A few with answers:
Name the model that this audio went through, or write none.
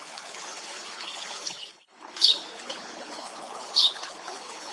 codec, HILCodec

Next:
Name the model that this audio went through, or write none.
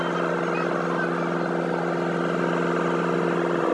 none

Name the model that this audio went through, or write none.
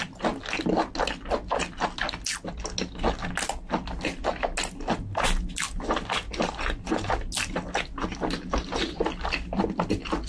none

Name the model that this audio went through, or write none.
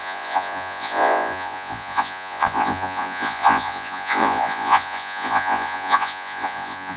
vocoder, Vocos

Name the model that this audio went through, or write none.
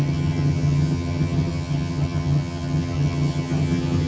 vocoder, HiFi-GAN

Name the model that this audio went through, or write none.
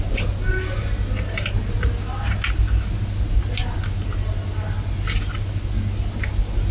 none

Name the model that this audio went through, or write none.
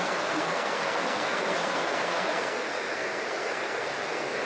codec, SNAC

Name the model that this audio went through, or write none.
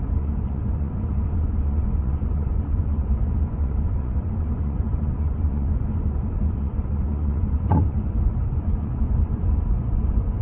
vocoder, Vocos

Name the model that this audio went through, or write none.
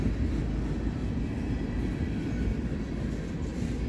none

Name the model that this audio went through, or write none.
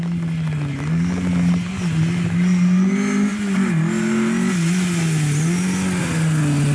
none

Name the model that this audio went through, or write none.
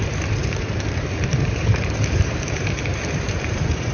vocoder, BigVGAN v2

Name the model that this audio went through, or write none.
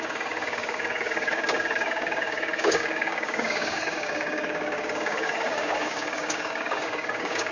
codec, DAC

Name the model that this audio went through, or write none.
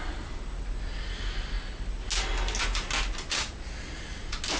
none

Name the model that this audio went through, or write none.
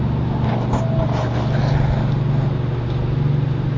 none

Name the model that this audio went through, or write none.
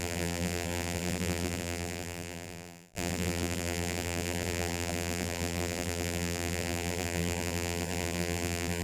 vocoder, BigVGAN v2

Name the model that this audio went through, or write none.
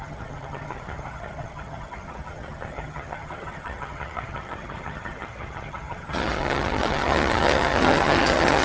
vocoder, HiFi-GAN